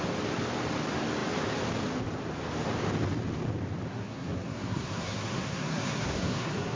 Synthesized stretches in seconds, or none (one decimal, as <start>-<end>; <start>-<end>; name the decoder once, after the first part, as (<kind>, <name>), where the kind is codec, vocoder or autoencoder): 3.9-6.8 (codec, SNAC)